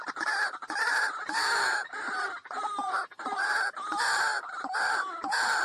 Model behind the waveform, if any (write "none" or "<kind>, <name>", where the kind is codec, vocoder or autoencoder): none